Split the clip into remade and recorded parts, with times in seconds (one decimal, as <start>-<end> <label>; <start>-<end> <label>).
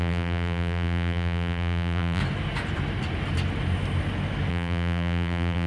0.0-2.2 remade; 2.2-4.5 recorded; 4.5-5.7 remade